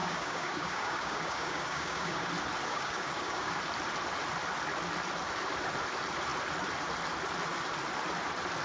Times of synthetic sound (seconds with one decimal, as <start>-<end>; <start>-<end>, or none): 0.0-2.3; 2.7-3.6